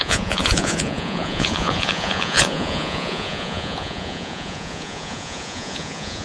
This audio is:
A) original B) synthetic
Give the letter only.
B